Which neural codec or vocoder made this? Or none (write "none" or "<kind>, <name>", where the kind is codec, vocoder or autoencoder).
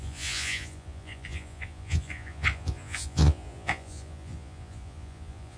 vocoder, Vocos